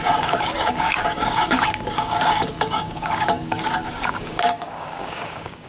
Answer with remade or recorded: remade